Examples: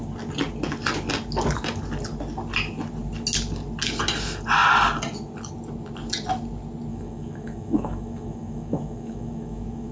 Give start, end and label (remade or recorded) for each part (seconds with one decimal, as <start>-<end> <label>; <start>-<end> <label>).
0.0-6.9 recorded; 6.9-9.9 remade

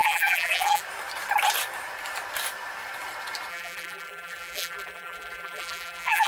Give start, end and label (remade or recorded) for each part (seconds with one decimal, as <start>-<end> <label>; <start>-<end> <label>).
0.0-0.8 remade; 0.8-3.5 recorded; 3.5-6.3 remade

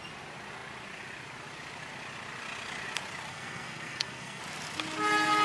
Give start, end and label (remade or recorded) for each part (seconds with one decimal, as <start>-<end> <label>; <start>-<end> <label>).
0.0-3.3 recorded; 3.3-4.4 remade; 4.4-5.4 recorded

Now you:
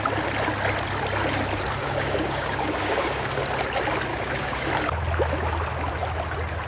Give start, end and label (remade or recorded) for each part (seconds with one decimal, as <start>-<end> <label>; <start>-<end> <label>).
0.0-1.8 recorded; 1.8-3.4 remade; 3.4-4.1 recorded; 4.1-4.7 remade; 4.7-6.7 recorded

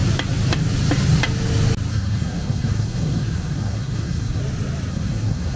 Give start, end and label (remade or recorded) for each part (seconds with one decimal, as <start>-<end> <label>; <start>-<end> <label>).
0.0-1.9 recorded; 1.9-4.4 remade; 4.4-4.9 recorded; 4.9-5.6 remade

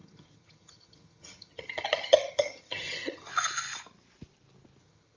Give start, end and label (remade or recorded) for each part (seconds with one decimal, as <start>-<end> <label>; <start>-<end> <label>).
0.0-3.3 remade; 3.3-4.8 recorded; 4.8-5.2 remade